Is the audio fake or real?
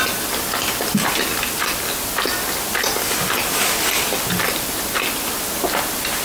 real